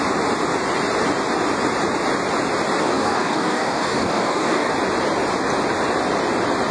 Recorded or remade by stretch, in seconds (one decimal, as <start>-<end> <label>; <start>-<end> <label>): 0.0-2.8 recorded; 2.8-4.7 remade; 4.7-6.7 recorded